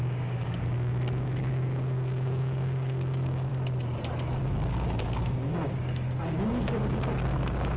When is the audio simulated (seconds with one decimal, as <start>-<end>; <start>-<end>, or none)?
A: 0.0-3.5; 4.4-7.8